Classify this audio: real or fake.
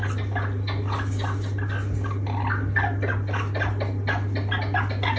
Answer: real